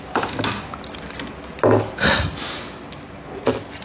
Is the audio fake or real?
real